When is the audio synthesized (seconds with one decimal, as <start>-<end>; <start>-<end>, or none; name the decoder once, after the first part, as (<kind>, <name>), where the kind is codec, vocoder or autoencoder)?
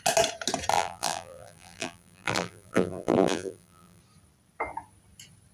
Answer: 0.7-4.0 (vocoder, BigVGAN v2)